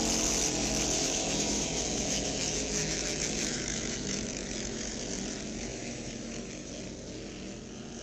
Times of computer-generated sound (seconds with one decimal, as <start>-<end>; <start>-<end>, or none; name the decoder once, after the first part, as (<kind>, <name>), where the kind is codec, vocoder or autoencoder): 1.0-4.9 (autoencoder, DAC-VAE); 5.7-6.7